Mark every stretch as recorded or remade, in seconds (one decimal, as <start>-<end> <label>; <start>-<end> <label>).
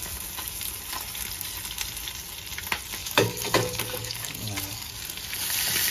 0.0-3.0 recorded; 3.0-4.9 remade; 4.9-5.9 recorded